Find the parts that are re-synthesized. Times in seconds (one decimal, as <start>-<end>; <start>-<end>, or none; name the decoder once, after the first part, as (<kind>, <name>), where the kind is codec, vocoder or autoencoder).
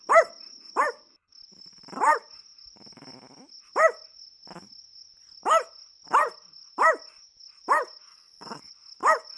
8.1-8.6 (vocoder, WaveNeXt)